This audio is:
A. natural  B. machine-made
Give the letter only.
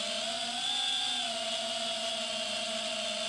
A